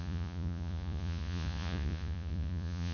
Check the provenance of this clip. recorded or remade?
remade